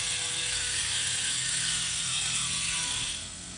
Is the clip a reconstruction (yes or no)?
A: yes